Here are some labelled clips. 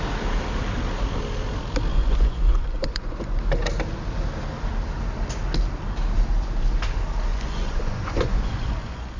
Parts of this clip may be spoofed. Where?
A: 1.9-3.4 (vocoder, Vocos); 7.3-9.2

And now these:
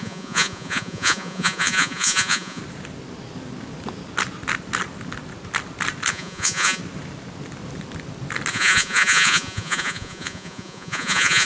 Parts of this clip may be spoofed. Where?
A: 0.0-2.6 (vocoder, Vocos); 6.1-6.8; 8.5-11.4

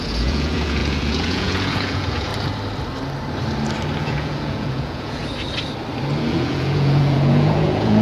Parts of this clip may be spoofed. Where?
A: 0.0-2.3 (vocoder, Vocos); 4.0-5.2; 6.3-8.0